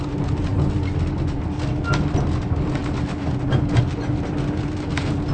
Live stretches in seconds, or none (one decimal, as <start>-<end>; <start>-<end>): 0.0-5.3